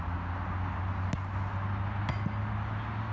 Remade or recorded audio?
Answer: recorded